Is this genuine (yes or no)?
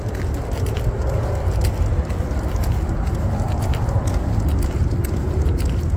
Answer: yes